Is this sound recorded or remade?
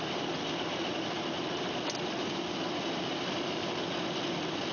recorded